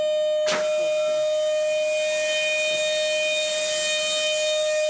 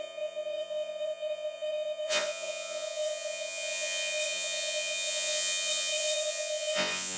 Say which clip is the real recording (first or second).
first